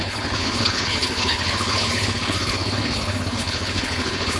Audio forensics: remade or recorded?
remade